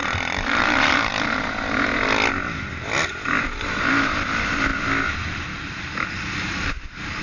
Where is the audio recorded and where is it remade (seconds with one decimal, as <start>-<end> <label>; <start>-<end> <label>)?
0.0-1.1 remade; 1.1-3.6 recorded; 3.6-4.7 remade; 4.7-6.4 recorded; 6.4-7.2 remade